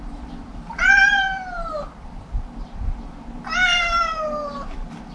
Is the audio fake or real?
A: fake